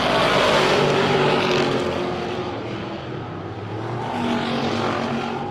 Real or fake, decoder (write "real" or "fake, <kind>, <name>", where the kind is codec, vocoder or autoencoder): real